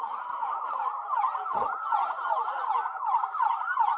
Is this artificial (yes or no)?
no